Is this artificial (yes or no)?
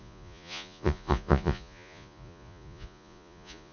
yes